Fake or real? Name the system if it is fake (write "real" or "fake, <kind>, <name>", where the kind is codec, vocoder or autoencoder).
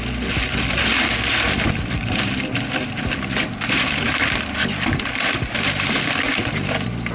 fake, vocoder, BigVGAN v2